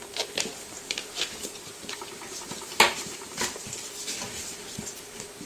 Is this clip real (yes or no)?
no